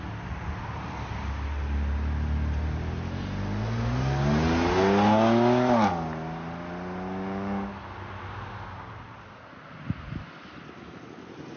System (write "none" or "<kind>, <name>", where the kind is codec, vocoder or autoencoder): none